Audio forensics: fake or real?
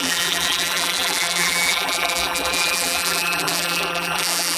fake